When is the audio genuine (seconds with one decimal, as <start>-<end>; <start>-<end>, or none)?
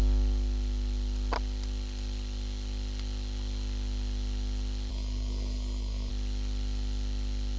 0.0-4.9; 6.1-7.6